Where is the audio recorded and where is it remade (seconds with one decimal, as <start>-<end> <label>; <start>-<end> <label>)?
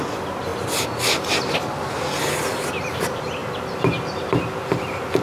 0.0-5.2 recorded